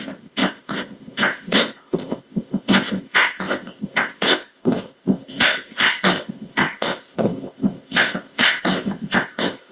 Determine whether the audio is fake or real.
fake